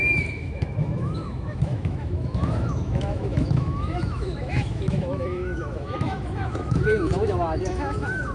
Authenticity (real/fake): fake